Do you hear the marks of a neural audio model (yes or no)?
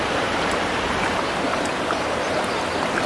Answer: no